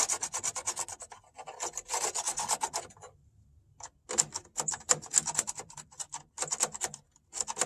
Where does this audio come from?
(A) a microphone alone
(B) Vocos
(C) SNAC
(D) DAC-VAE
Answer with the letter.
A